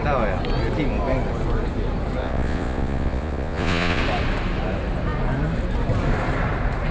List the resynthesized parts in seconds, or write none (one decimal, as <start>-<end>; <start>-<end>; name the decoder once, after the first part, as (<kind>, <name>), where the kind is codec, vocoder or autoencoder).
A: 2.2-4.0 (vocoder, Vocos)